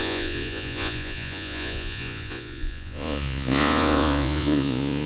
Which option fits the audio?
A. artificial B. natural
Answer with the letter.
A